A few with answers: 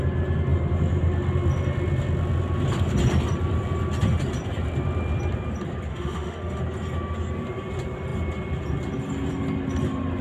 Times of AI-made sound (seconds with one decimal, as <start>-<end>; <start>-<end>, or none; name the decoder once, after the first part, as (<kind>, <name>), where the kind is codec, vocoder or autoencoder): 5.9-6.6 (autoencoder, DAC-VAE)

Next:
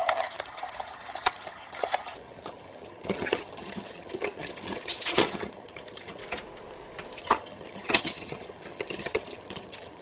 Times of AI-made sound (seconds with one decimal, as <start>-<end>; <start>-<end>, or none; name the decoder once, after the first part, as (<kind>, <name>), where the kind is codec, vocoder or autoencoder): 0.0-6.2 (vocoder, HiFi-GAN); 7.2-10.0

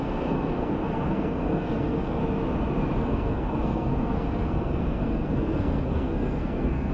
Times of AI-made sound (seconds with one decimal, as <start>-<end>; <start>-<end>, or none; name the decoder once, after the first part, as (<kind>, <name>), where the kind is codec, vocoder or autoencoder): 0.0-2.2 (codec, SNAC); 3.0-6.9